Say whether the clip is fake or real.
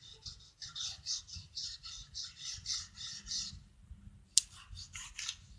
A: real